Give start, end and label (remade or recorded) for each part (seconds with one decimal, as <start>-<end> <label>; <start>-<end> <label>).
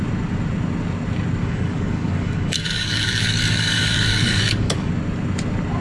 0.0-1.4 recorded; 1.4-4.9 remade; 4.9-5.8 recorded